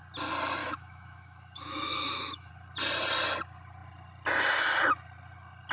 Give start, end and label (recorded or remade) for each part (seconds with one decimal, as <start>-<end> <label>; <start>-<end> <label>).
0.0-0.6 recorded; 0.6-2.5 remade; 2.5-5.7 recorded